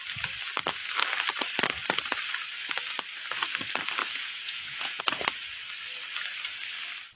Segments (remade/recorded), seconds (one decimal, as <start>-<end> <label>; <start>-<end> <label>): 0.0-4.0 recorded; 4.0-5.0 remade; 5.0-7.2 recorded